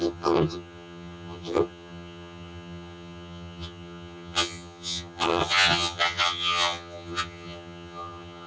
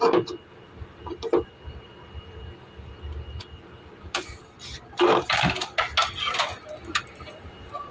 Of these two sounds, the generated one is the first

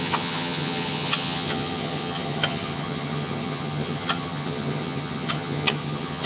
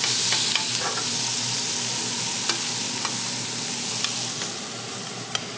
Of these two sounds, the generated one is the first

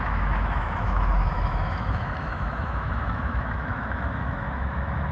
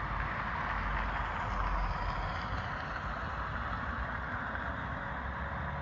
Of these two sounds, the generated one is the first